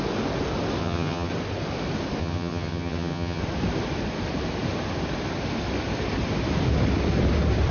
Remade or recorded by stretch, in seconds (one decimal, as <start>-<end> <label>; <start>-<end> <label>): 0.0-0.8 recorded; 0.8-1.3 remade; 1.3-2.2 recorded; 2.2-3.4 remade; 3.4-7.7 recorded